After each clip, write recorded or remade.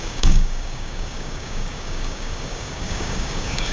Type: remade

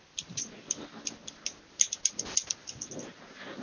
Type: recorded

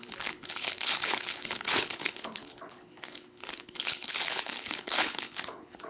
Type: remade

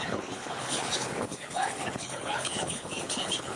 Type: remade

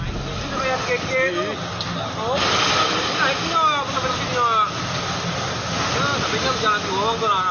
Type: recorded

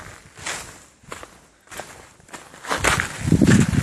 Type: recorded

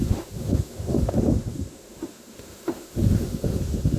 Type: remade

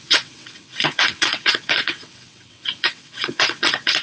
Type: remade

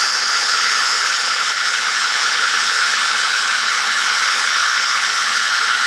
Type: remade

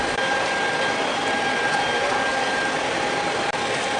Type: recorded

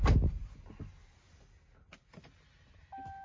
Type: recorded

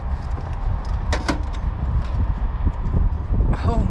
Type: recorded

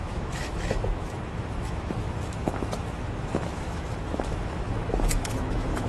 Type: remade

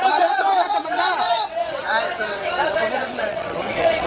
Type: remade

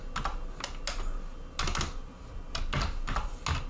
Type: recorded